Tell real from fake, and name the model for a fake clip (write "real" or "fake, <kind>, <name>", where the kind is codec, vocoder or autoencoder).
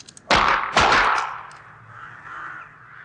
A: real